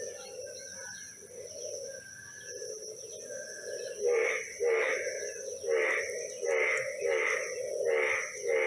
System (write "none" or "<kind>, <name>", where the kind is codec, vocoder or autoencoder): none